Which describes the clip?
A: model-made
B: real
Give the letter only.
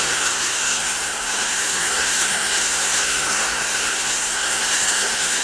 A